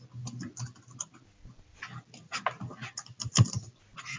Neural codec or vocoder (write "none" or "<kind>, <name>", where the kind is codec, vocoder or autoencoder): none